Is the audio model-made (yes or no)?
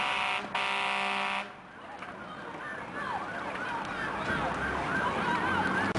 no